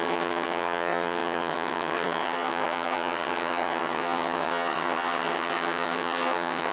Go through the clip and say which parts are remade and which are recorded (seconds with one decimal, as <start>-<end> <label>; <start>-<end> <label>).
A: 0.0-6.7 remade